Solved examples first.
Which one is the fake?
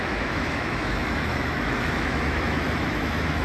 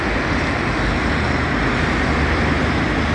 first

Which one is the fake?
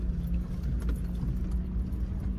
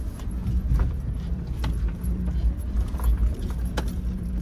second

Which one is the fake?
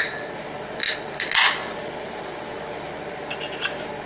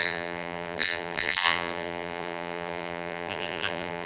second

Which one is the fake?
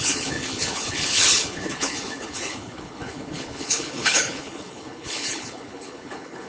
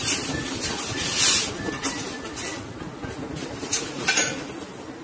first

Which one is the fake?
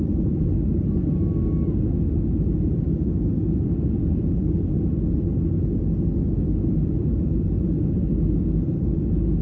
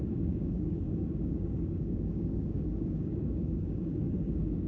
second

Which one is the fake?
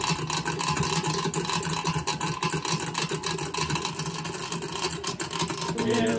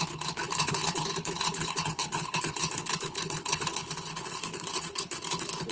second